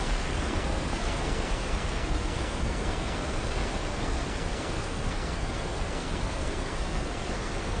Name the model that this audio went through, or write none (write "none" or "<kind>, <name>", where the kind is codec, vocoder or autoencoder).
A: codec, SNAC